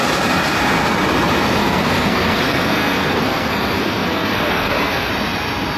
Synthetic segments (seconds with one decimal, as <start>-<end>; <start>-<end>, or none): 1.6-5.1